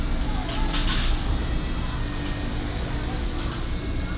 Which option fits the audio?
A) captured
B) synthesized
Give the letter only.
A